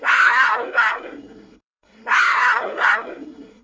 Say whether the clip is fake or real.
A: fake